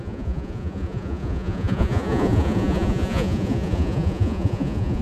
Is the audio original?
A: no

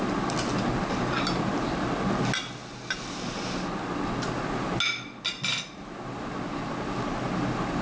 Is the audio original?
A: yes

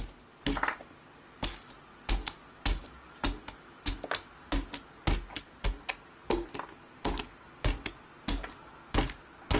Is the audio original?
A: yes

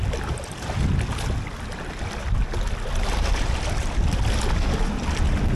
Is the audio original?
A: yes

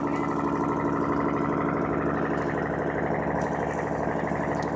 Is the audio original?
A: yes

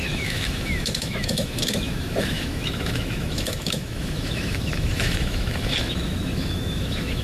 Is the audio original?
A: no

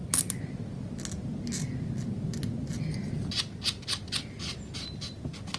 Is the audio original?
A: yes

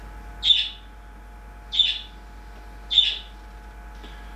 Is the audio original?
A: yes